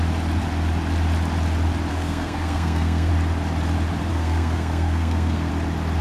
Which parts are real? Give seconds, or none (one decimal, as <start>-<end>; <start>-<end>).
0.0-1.9; 3.1-4.1; 5.5-6.0